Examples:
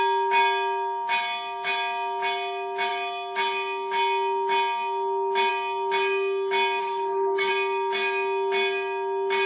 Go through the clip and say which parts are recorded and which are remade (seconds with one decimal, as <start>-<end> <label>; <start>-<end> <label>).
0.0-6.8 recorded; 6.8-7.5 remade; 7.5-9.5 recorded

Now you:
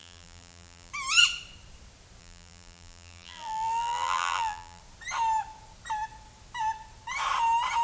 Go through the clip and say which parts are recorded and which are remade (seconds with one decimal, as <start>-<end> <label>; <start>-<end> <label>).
0.0-0.9 remade; 0.9-2.2 recorded; 2.2-4.8 remade; 4.8-7.8 recorded

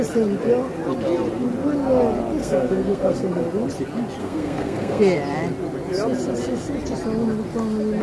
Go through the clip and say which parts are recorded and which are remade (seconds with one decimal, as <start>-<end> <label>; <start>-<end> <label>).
0.0-2.4 recorded; 2.4-3.4 remade; 3.4-4.2 recorded; 4.2-5.0 remade; 5.0-8.0 recorded